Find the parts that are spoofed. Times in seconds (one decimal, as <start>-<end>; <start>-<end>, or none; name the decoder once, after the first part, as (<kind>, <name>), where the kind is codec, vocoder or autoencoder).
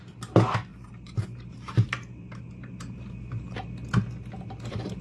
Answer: 0.7-3.1 (vocoder, BigVGAN v2)